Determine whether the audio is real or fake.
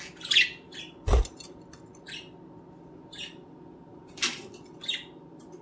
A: real